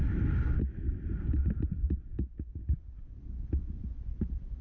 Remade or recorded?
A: recorded